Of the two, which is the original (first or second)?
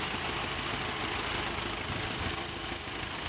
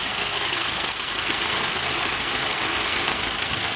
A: first